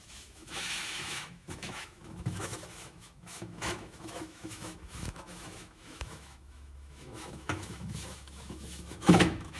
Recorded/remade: remade